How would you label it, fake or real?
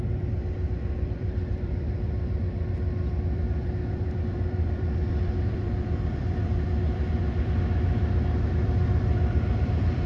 fake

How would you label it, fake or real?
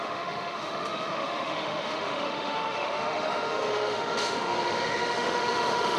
fake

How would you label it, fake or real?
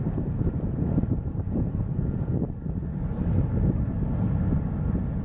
real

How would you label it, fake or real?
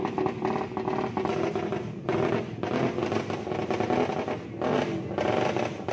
real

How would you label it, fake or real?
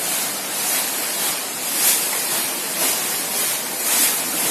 real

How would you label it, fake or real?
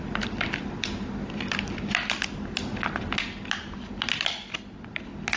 real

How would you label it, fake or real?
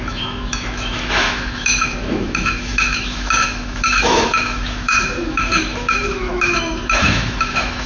fake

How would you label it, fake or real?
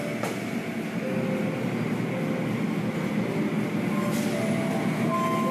real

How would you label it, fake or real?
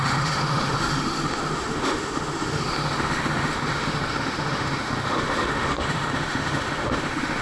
fake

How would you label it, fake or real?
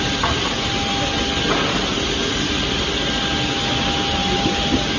real